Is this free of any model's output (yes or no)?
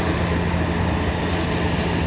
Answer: yes